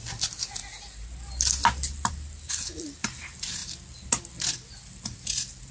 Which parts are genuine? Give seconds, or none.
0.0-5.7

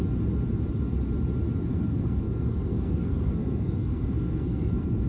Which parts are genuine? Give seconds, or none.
0.0-1.7

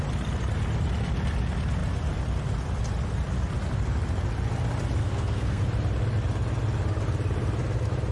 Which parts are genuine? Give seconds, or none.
0.0-5.0; 5.6-8.1